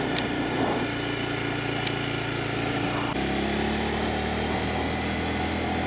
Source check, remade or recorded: recorded